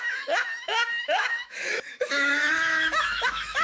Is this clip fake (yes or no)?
yes